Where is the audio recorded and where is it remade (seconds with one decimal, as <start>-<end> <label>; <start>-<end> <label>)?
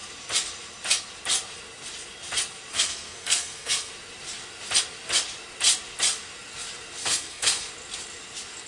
0.0-2.7 recorded; 2.7-3.9 remade; 3.9-7.0 recorded; 7.0-7.7 remade; 7.7-8.7 recorded